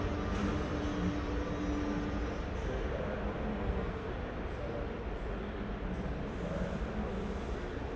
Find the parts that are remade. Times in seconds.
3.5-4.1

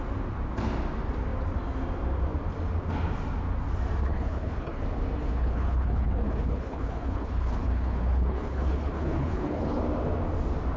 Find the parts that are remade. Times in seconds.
4.0-4.8; 5.2-9.8

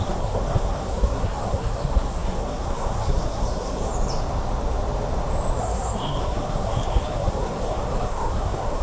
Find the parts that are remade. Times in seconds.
0.0-3.9; 5.6-8.8